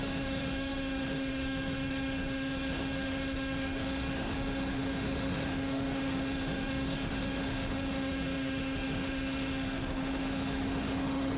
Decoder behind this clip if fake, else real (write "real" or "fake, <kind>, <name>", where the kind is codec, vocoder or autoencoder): fake, autoencoder, DAC-VAE